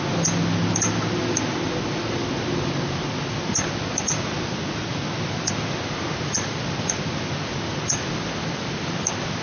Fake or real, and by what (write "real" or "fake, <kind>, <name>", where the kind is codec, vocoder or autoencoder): real